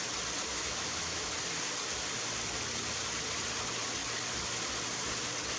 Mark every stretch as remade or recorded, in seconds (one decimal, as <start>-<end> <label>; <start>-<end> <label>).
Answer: 0.0-0.4 recorded; 0.4-1.3 remade; 1.3-5.6 recorded